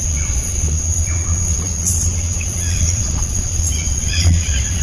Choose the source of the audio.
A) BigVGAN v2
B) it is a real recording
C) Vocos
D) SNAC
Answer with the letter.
C